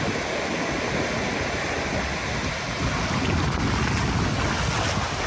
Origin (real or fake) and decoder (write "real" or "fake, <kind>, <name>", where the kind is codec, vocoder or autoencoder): real